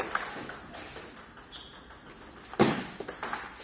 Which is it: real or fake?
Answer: real